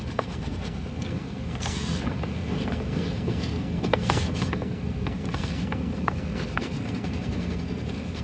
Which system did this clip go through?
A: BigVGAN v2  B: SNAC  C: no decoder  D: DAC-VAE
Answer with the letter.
B